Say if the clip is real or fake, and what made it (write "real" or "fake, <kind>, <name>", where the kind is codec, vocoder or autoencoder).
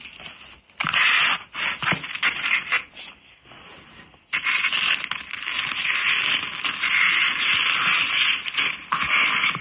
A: real